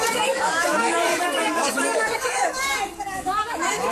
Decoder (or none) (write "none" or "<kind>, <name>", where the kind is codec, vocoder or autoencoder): codec, DAC